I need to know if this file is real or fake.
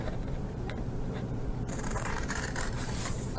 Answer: fake